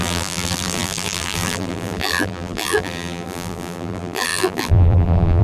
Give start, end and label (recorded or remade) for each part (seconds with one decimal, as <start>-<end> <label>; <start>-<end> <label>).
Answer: 0.0-5.4 remade